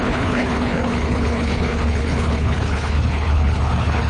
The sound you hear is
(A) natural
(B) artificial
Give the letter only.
B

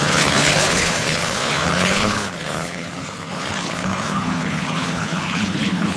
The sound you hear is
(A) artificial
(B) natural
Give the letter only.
A